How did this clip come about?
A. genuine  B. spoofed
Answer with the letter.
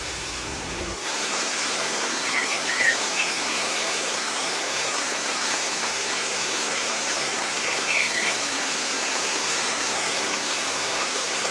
B